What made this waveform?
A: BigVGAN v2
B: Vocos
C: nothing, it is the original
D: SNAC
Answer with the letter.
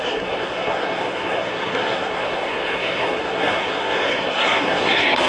D